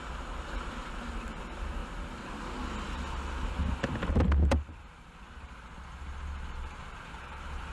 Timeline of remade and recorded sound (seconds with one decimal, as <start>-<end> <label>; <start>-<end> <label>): 0.0-7.7 recorded